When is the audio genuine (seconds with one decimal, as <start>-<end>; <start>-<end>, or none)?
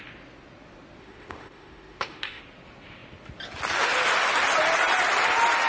0.0-1.0; 2.4-5.7